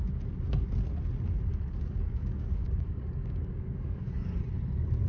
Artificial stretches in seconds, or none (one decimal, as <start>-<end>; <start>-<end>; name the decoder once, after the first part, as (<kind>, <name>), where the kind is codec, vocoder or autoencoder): 1.5-4.4 (codec, DAC)